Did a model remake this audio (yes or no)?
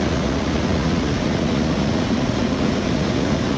yes